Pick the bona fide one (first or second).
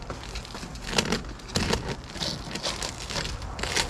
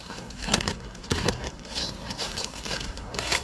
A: first